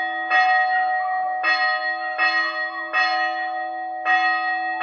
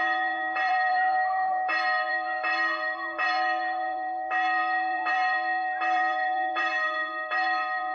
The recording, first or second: first